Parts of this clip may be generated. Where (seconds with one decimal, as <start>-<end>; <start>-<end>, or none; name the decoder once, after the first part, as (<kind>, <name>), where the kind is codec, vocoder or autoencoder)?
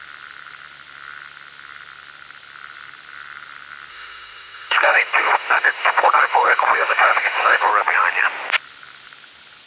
3.9-7.7 (autoencoder, DAC-VAE)